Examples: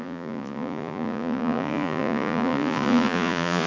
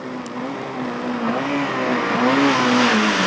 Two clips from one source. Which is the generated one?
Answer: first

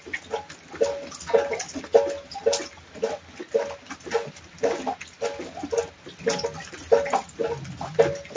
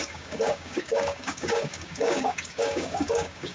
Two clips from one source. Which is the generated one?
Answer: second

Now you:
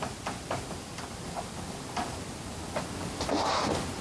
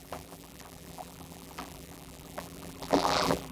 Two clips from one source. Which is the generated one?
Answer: second